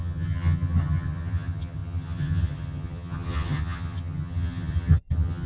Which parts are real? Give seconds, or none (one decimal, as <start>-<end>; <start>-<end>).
none